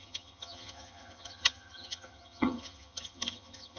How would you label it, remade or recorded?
remade